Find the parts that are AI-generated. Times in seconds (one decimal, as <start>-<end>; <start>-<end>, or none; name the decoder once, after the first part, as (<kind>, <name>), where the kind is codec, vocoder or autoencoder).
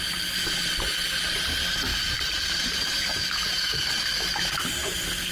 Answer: 1.9-3.2 (vocoder, BigVGAN v2)